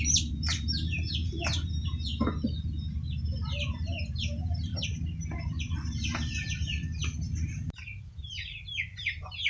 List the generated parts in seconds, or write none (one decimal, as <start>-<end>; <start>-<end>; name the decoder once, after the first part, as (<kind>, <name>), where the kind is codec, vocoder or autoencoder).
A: 0.0-2.1 (vocoder, BigVGAN v2); 3.3-4.7; 5.2-9.5